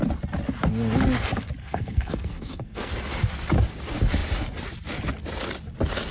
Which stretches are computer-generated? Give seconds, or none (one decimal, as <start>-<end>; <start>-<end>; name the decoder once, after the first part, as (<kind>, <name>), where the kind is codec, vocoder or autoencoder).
1.6-2.9 (codec, SNAC)